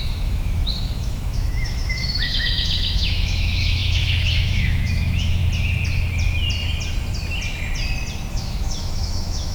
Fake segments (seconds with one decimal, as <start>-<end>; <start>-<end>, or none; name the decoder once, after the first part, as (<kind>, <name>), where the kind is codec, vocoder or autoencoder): 0.0-5.4 (autoencoder, DAC-VAE); 8.3-9.5

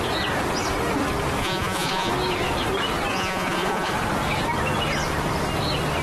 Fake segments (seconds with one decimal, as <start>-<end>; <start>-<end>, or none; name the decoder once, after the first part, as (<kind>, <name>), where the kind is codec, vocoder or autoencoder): 1.4-2.1 (vocoder, Vocos); 3.1-3.9

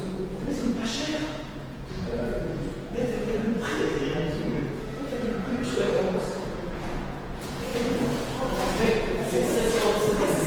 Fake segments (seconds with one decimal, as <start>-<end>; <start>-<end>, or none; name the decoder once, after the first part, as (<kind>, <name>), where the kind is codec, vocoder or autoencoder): 0.0-10.5 (vocoder, Vocos)

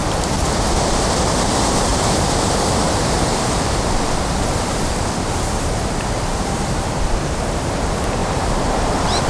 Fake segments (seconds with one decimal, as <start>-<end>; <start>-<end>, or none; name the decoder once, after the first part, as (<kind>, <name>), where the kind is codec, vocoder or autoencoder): 1.9-5.1 (vocoder, BigVGAN v2); 6.3-7.7; 8.2-9.3